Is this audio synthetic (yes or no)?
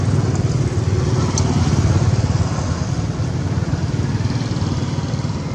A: no